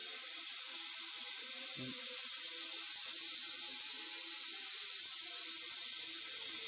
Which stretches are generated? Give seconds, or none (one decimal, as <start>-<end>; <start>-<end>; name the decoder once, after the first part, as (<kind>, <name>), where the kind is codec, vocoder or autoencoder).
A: 0.0-0.6 (vocoder, BigVGAN v2)